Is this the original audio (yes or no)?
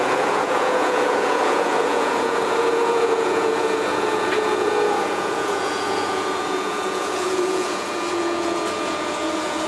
no